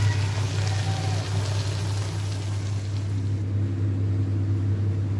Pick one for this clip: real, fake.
real